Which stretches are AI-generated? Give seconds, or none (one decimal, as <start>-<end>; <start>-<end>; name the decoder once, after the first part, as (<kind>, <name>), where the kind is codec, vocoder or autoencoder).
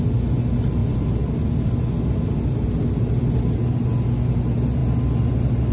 none